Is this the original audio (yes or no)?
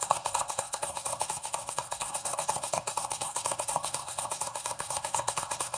no